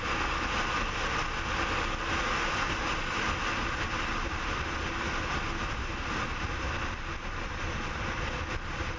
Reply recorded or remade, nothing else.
recorded